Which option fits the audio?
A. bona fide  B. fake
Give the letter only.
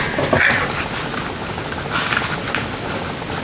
A